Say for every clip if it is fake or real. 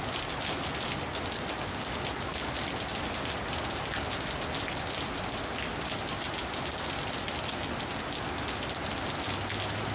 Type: real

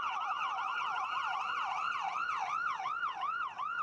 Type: fake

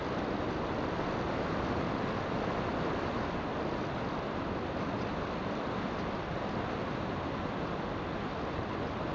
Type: real